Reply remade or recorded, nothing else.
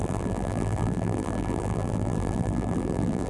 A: remade